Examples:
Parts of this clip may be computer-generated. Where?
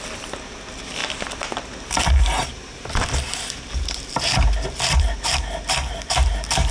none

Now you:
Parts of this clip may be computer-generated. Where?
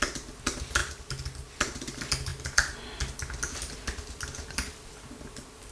none